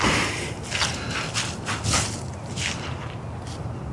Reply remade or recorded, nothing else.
recorded